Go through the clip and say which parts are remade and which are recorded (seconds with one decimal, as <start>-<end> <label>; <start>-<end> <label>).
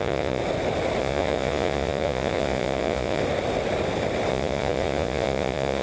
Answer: 0.0-0.4 remade; 0.4-1.0 recorded; 1.0-3.2 remade; 3.2-4.3 recorded; 4.3-5.8 remade